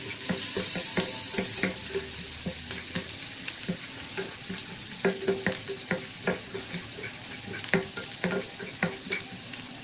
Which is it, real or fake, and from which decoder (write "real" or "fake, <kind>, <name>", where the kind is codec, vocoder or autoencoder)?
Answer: real